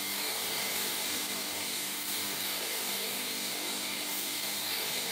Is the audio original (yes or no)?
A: no